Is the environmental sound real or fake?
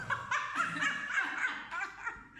real